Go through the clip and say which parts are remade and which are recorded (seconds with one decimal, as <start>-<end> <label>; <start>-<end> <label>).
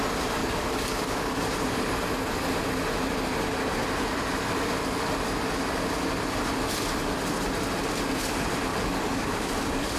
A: 0.0-0.4 recorded; 0.4-1.4 remade; 1.4-8.7 recorded; 8.7-10.0 remade